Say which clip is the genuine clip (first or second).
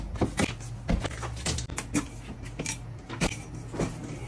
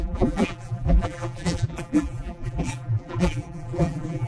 first